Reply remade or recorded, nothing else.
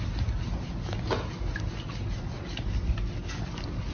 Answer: recorded